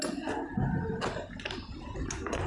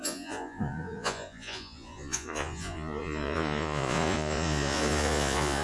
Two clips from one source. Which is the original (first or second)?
first